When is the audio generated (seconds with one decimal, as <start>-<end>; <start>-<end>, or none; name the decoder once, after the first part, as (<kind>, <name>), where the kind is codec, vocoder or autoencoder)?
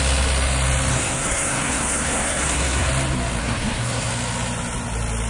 0.9-2.9 (codec, SNAC); 3.4-4.1